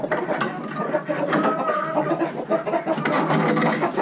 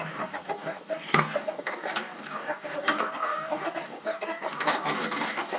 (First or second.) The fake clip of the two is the second